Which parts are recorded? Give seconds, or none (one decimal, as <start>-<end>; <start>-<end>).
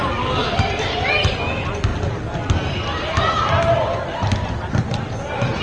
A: 0.0-5.6